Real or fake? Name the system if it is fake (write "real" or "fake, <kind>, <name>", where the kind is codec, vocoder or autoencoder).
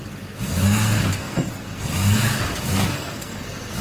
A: fake, codec, SNAC